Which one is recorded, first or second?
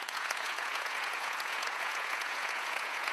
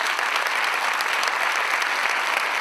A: second